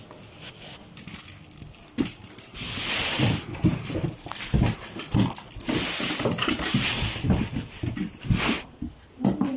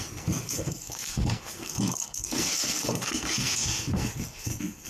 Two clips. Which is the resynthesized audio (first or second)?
second